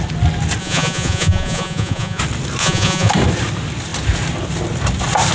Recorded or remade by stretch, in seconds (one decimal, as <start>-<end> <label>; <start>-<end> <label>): 0.0-0.6 recorded; 0.6-2.2 remade; 2.2-2.6 recorded; 2.6-3.1 remade; 3.1-5.3 recorded